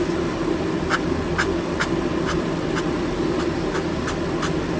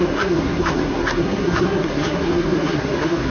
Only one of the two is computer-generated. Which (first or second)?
second